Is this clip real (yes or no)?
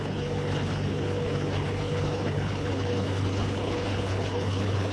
no